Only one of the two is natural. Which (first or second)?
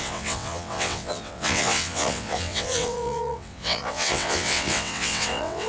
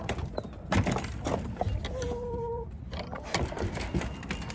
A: second